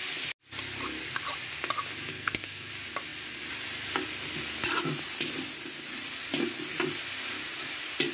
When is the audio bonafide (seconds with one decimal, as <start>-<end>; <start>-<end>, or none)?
0.0-2.1; 2.7-8.1